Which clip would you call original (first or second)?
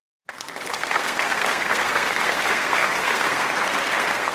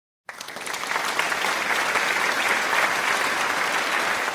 second